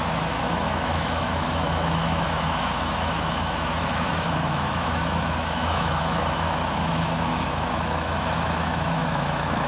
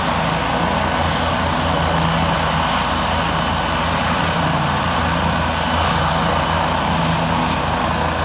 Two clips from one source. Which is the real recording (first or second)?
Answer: second